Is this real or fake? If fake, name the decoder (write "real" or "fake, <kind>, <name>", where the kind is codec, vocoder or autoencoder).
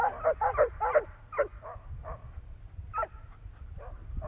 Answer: fake, vocoder, BigVGAN v2